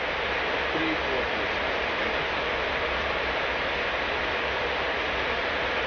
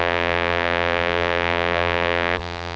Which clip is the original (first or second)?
first